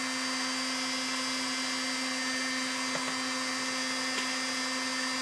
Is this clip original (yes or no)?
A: yes